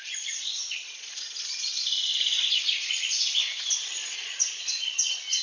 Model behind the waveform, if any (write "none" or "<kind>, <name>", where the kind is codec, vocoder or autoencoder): vocoder, Vocos